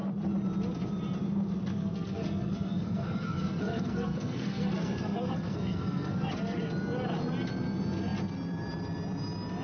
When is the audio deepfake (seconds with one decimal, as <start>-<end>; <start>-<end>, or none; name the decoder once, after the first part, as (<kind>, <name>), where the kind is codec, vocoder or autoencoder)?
1.7-6.3 (codec, SNAC)